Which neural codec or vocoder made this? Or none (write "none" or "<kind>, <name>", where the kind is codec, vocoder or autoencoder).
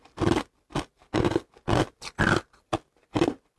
none